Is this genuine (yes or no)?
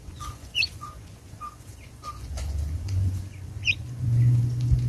no